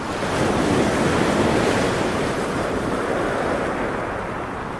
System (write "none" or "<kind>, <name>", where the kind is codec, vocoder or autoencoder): none